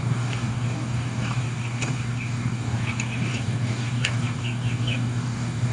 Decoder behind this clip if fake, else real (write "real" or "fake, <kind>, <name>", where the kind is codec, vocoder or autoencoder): fake, codec, DAC